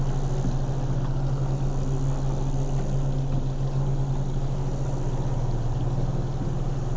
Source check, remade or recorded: recorded